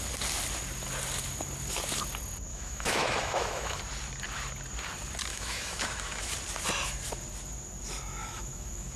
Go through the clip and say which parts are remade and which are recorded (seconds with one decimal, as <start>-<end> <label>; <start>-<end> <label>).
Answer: 0.0-2.5 recorded; 2.5-3.8 remade; 3.8-5.3 recorded; 5.3-6.3 remade; 6.3-8.2 recorded; 8.2-9.0 remade